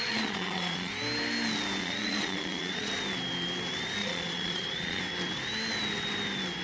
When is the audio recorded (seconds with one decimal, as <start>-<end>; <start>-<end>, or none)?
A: 0.9-1.8; 2.9-4.0; 5.0-6.6